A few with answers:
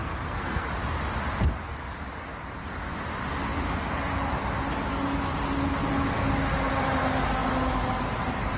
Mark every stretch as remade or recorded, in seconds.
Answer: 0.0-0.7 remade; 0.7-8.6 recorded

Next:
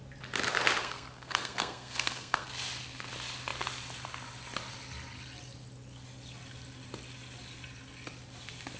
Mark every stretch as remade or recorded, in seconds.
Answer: 0.0-0.8 recorded; 0.8-2.5 remade; 2.5-8.8 recorded

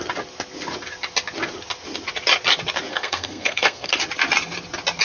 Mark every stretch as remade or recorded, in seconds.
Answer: 0.0-2.9 recorded; 2.9-3.9 remade; 3.9-5.0 recorded

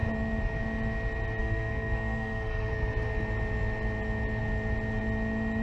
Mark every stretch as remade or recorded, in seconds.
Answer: 0.0-1.4 recorded; 1.4-2.7 remade; 2.7-5.6 recorded

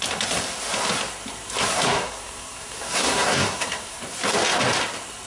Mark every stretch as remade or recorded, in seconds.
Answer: 0.0-1.7 recorded; 1.7-4.0 remade; 4.0-5.3 recorded

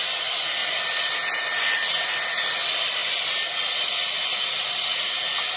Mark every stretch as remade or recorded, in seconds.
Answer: 0.0-5.6 recorded